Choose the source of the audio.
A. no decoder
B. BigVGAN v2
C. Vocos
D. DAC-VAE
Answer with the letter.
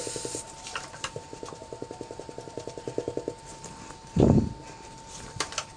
A